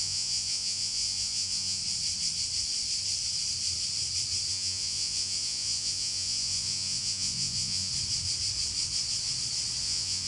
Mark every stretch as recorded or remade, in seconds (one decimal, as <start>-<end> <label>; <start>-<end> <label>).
0.0-1.8 remade; 1.8-4.5 recorded; 4.5-7.9 remade; 7.9-9.8 recorded; 9.8-10.3 remade